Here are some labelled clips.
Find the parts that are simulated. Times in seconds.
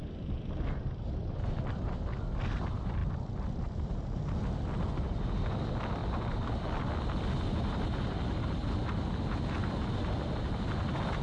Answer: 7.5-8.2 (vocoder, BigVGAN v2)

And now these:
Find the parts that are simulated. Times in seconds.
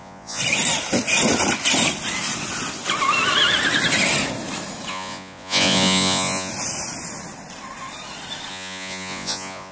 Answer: 0.0-0.4 (vocoder, Vocos); 4.9-6.5; 8.5-9.7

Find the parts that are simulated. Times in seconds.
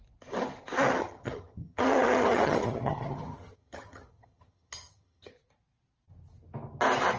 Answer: 1.0-5.3 (vocoder, HiFi-GAN)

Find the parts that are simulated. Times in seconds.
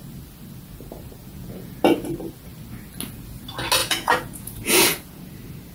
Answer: 1.2-1.8 (vocoder, Vocos); 3.8-5.2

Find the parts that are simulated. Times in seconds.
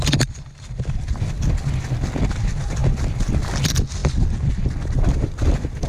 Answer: none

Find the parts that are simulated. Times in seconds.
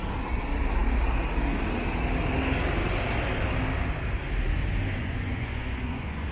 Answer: 5.0-6.3 (vocoder, Vocos)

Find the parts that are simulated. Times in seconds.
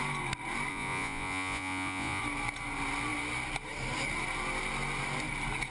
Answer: 0.7-2.2 (vocoder, Vocos)